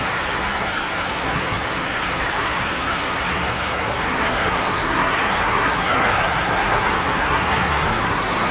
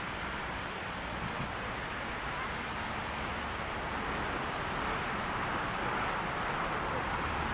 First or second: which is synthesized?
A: first